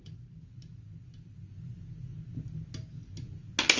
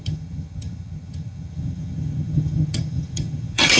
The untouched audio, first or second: first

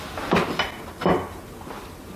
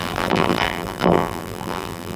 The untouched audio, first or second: first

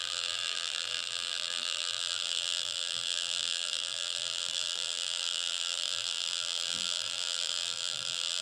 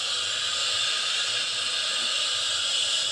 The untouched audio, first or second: second